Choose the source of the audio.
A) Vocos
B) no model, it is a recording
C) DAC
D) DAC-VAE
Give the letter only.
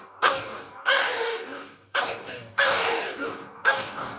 C